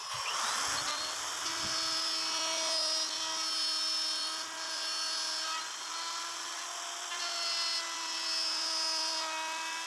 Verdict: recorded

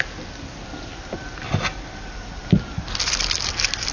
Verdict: recorded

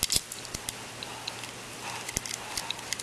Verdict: recorded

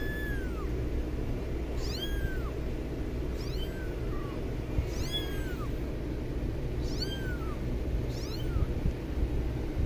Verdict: recorded